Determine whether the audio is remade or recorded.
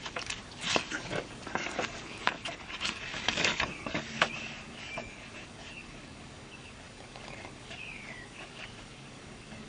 remade